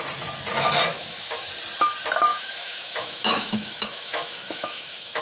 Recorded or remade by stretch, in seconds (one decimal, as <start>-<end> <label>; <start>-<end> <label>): 0.0-0.9 recorded; 0.9-1.5 remade; 1.5-2.3 recorded; 2.3-5.2 remade